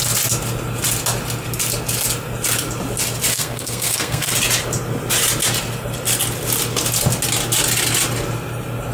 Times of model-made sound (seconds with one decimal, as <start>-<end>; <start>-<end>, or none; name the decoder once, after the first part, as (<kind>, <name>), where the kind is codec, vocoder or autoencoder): 3.3-4.3 (codec, SNAC)